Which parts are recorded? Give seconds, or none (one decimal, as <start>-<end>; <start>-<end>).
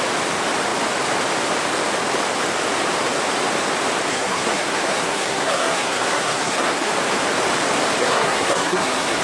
0.0-4.1; 6.9-8.0